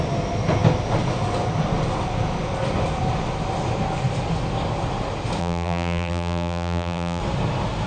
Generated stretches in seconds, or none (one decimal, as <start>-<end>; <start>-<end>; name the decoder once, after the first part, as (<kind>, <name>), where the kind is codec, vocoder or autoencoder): 5.4-7.2 (vocoder, BigVGAN v2)